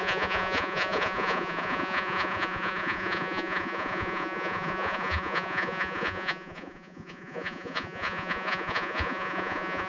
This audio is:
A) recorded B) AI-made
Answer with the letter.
B